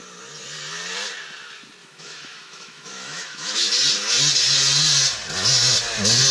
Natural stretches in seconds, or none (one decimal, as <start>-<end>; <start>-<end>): 0.0-1.8; 3.7-6.3